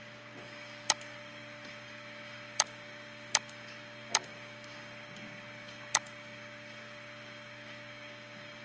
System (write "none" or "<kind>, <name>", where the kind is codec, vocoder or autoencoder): codec, DAC